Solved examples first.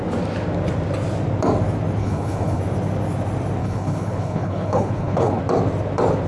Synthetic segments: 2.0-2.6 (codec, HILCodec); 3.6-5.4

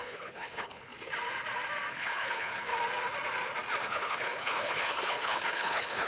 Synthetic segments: 0.0-0.9 (codec, HILCodec); 1.9-2.7; 3.8-6.1

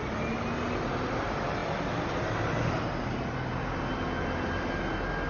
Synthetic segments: none

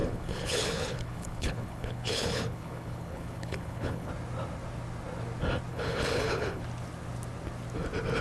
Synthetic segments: 0.0-4.1 (codec, HILCodec); 5.7-6.6